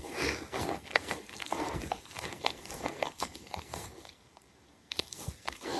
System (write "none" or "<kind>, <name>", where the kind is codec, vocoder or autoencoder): codec, SNAC